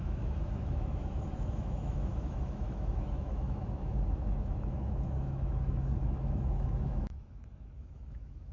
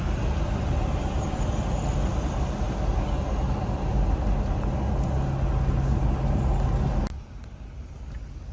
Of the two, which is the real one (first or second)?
second